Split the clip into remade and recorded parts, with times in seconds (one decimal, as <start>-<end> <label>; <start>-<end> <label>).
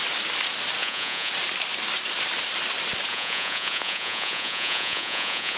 0.0-0.8 recorded; 0.8-1.3 remade; 1.3-3.1 recorded; 3.1-5.6 remade